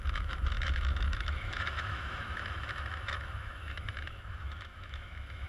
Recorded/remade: remade